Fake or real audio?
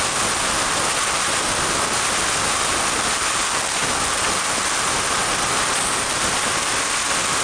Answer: real